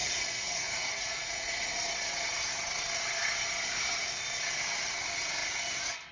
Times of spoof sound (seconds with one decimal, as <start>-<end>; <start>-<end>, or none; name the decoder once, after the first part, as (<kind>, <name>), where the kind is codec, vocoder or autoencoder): 0.0-1.7 (vocoder, Vocos)